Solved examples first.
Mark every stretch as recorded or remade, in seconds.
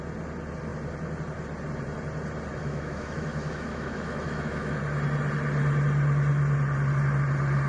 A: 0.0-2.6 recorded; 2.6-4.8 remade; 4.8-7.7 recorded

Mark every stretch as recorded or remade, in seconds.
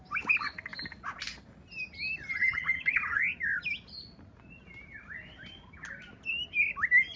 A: 0.0-2.3 recorded; 2.3-3.2 remade; 3.2-7.2 recorded